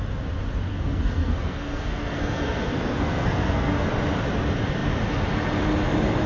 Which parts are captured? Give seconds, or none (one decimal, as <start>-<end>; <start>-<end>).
0.0-0.7; 3.9-6.3